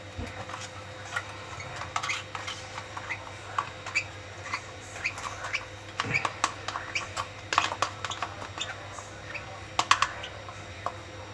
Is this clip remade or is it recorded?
recorded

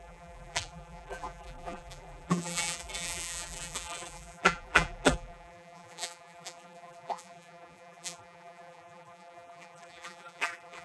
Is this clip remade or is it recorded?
remade